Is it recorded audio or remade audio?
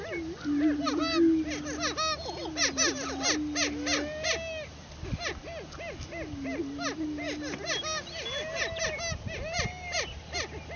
recorded